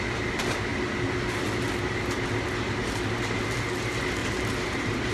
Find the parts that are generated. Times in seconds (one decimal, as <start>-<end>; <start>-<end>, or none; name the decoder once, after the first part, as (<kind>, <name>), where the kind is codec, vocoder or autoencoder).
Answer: 4.2-5.1 (vocoder, BigVGAN v2)